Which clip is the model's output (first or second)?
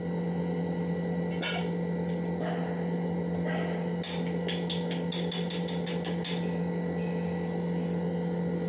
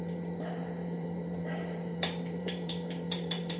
second